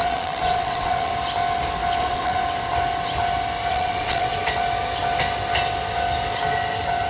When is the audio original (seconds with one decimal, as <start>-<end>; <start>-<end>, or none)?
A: 1.1-2.0; 2.4-3.7; 4.3-7.1